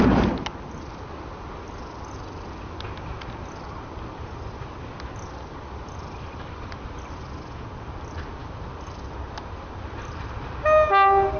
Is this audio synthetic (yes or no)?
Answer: no